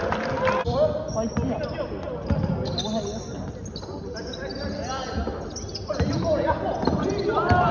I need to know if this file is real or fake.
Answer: real